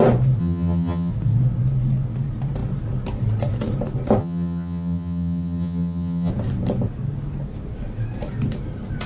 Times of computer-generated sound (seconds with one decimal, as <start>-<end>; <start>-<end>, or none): 0.4-1.1; 4.2-6.3